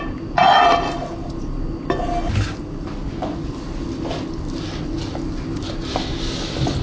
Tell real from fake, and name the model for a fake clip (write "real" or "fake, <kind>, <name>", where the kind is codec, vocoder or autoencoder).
real